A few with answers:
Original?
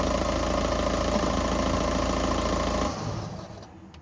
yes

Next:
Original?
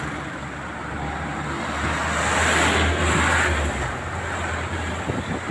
yes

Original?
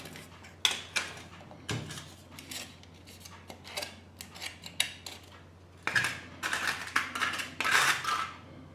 yes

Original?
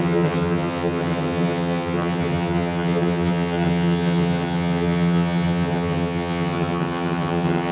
no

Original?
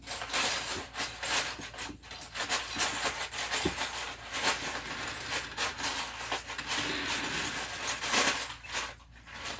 yes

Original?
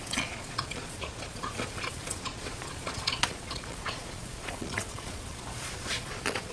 no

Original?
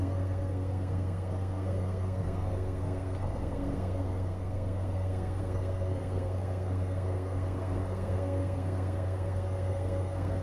no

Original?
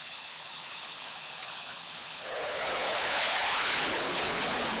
no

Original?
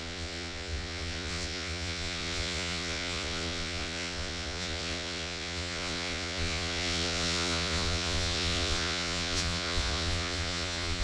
no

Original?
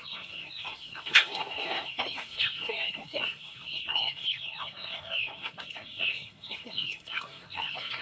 no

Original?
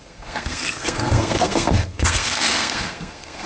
no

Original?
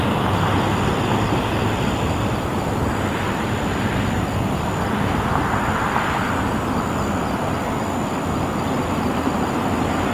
yes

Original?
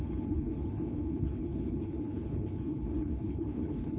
no